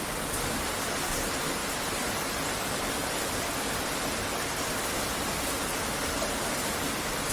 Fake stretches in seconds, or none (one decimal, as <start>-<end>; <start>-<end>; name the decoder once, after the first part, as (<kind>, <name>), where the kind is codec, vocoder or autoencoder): none